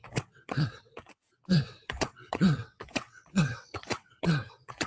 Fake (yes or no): yes